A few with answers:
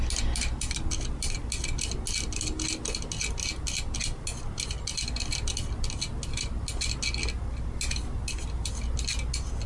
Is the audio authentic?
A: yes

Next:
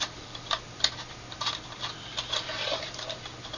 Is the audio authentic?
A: no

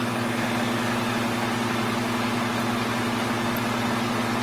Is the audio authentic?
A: yes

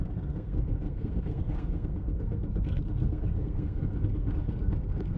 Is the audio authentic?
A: no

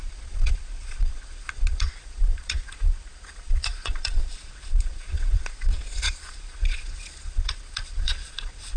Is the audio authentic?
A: no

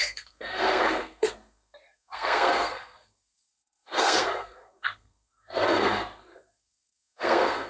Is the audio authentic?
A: no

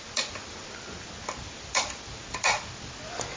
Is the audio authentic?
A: yes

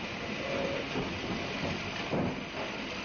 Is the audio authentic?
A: yes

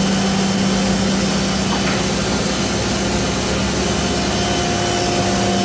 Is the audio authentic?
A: yes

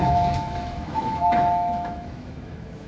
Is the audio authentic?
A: no